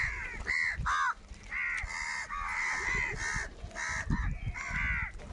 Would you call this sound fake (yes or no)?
no